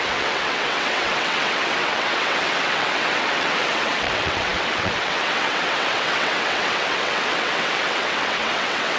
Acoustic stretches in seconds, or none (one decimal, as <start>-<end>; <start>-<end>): none